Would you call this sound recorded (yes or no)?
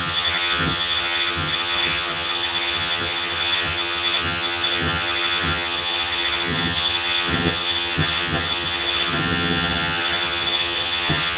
no